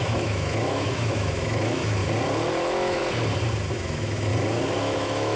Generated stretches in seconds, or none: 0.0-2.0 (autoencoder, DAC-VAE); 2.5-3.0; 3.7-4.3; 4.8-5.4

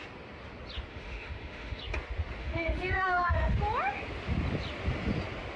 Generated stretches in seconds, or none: 0.9-1.8 (autoencoder, DAC-VAE); 2.4-3.6

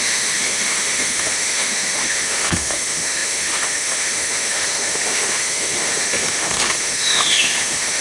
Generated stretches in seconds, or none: 0.0-8.0 (autoencoder, DAC-VAE)

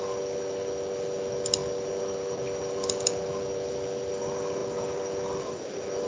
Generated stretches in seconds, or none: none

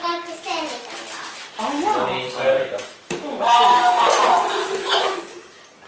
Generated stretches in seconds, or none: 2.1-3.4 (autoencoder, DAC-VAE); 4.6-5.2